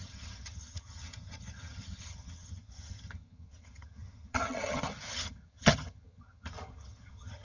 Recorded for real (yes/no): no